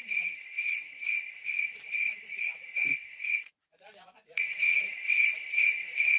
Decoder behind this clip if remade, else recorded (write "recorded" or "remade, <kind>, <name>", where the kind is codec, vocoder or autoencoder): remade, vocoder, Vocos